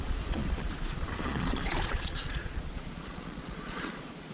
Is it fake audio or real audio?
fake